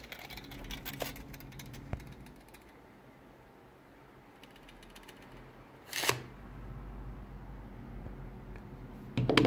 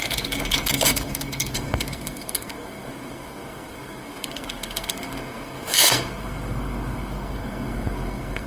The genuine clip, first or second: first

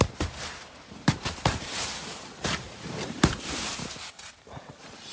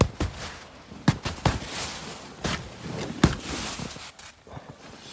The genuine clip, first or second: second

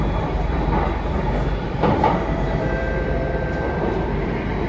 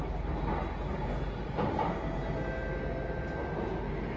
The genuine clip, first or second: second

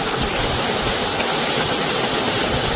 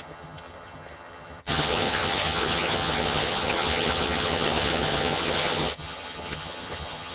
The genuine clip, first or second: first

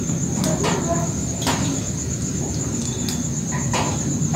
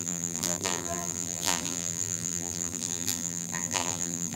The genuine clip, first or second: first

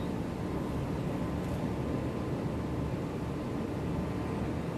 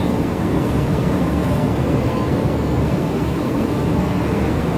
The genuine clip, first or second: first